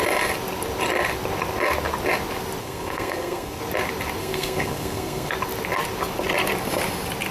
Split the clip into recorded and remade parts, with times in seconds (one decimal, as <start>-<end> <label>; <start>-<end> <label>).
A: 0.0-2.6 recorded; 2.6-3.6 remade; 3.6-4.2 recorded; 4.2-5.3 remade; 5.3-7.3 recorded